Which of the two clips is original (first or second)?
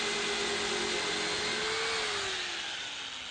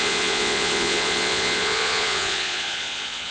first